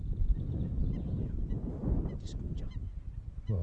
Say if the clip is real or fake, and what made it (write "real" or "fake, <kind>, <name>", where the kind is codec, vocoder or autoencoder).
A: real